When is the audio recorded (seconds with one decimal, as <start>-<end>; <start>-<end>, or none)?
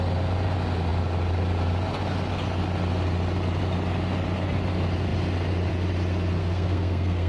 0.0-6.4